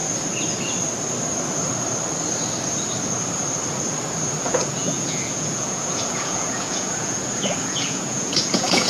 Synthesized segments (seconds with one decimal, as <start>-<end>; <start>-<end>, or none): 4.4-8.9